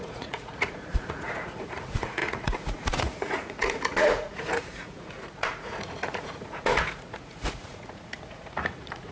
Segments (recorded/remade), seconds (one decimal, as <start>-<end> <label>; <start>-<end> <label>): 0.0-9.1 remade